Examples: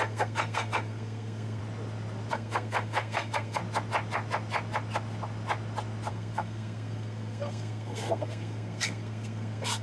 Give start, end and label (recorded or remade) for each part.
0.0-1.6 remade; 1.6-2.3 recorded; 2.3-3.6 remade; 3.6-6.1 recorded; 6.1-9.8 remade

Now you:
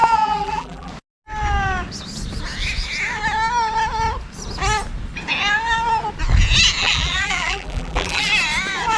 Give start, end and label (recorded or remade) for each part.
0.0-0.9 remade; 0.9-6.8 recorded; 6.8-8.3 remade; 8.3-9.0 recorded

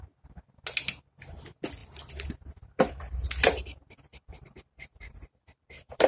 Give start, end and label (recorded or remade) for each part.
0.0-1.8 recorded; 1.8-3.6 remade; 3.6-4.1 recorded; 4.1-6.1 remade